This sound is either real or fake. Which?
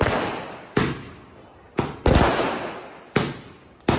real